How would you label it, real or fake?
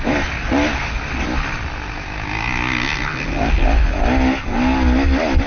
real